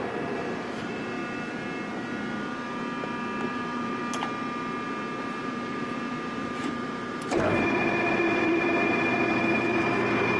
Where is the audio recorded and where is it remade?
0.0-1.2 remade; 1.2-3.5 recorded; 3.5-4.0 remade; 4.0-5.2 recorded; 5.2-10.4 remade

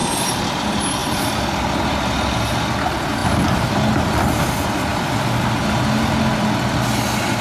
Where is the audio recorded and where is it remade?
0.0-0.6 remade; 0.6-4.9 recorded; 4.9-5.6 remade; 5.6-7.4 recorded

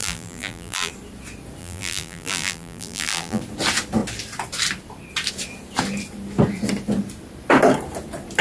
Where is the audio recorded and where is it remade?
0.0-0.9 remade; 0.9-1.6 recorded; 1.6-3.4 remade; 3.4-8.4 recorded

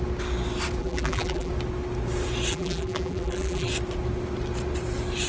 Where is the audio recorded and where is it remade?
0.0-0.8 recorded; 0.8-1.5 remade; 1.5-2.5 recorded; 2.5-3.7 remade; 3.7-5.3 recorded